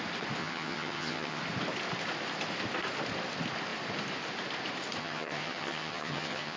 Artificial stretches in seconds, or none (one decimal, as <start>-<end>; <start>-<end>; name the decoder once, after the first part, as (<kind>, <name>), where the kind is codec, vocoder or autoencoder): 0.4-1.4 (vocoder, HiFi-GAN); 5.0-6.6